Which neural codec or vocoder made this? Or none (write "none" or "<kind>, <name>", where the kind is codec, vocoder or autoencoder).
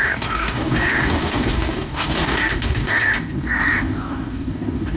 codec, DAC